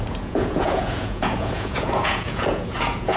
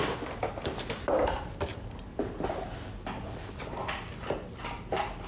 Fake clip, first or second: first